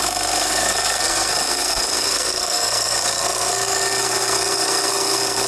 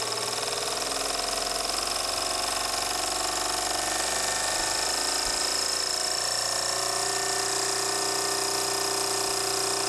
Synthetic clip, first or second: first